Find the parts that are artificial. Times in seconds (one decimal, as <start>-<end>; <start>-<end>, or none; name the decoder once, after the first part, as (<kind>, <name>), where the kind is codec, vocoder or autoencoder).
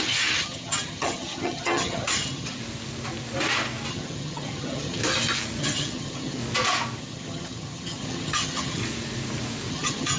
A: 0.0-2.6 (vocoder, HiFi-GAN); 3.9-5.0; 5.6-6.4; 7.0-8.8; 9.7-10.2